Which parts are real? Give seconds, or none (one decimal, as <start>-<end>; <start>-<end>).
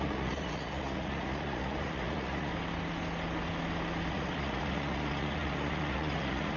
2.5-4.1